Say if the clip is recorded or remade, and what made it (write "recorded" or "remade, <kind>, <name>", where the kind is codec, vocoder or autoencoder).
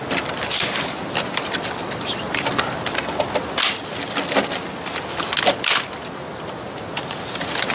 recorded